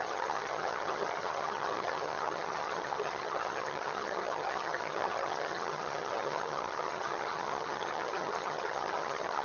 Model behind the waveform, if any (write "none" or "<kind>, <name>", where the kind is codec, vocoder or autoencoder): vocoder, HiFi-GAN